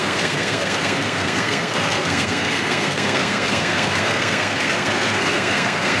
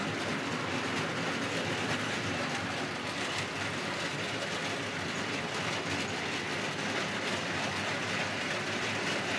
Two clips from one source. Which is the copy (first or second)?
first